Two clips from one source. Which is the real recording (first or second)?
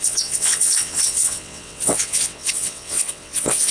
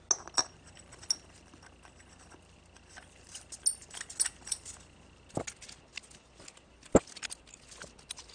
second